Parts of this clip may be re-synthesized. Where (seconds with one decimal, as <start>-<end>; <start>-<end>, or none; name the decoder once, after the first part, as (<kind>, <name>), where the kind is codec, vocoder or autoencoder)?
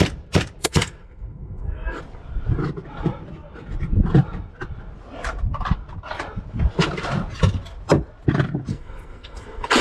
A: 0.6-2.0 (codec, SNAC); 8.7-9.8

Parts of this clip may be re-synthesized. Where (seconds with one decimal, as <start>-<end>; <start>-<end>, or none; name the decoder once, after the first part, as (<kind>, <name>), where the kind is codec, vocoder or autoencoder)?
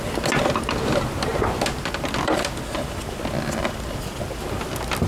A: none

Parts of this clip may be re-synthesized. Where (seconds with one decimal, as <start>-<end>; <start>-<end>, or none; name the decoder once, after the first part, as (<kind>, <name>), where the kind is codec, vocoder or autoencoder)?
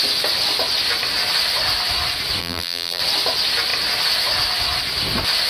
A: 2.4-3.0 (vocoder, BigVGAN v2)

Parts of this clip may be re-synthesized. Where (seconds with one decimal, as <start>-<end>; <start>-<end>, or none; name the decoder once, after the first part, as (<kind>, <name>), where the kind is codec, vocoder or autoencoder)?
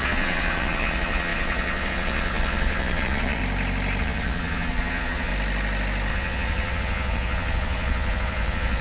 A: 0.0-3.4 (vocoder, Vocos); 4.0-5.3; 6.1-8.8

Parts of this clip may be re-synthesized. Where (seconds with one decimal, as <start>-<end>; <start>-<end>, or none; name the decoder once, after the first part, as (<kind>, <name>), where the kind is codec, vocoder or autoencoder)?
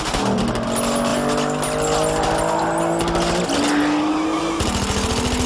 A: none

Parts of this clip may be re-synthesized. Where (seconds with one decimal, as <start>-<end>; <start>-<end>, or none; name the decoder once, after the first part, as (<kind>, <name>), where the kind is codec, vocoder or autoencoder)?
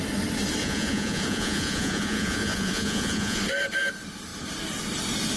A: 0.6-3.4 (vocoder, Vocos)